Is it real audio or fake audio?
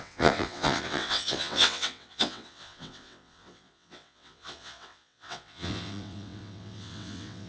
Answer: fake